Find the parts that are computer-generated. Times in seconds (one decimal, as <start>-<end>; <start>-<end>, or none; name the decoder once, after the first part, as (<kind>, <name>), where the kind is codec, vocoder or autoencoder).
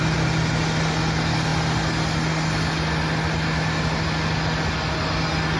none